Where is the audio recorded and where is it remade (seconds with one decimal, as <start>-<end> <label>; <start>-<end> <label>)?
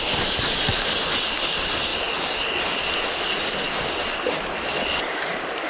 0.0-5.7 recorded